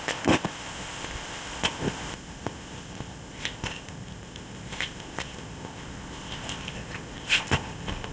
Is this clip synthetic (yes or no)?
yes